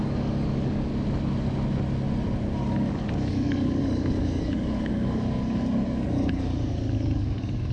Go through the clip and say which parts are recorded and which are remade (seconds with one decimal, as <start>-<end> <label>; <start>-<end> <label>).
0.0-0.9 remade; 0.9-2.6 recorded; 2.6-7.7 remade